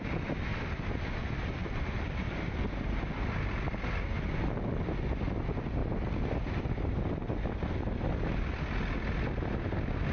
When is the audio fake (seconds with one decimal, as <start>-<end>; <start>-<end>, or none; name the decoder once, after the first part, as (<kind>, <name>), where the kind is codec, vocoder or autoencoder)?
1.6-3.0 (vocoder, BigVGAN v2)

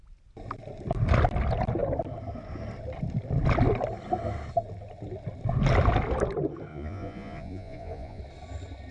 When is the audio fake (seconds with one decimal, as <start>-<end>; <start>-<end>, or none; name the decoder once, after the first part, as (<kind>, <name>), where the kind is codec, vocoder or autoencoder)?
6.7-8.2 (vocoder, Vocos)